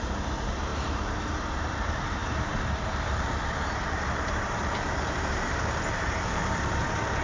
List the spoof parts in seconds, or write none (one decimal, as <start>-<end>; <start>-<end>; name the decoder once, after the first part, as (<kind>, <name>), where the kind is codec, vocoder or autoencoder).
0.0-7.2 (vocoder, BigVGAN v2)